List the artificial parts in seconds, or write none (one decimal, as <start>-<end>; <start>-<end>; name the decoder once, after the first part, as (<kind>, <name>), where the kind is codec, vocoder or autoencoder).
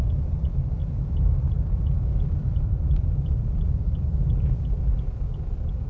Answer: 0.8-2.0 (vocoder, BigVGAN v2); 2.5-3.8